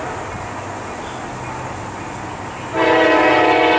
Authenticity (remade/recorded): recorded